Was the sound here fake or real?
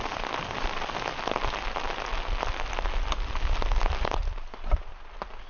real